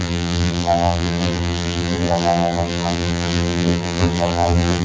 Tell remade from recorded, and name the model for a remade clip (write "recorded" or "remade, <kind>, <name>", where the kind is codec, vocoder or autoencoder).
remade, vocoder, BigVGAN v2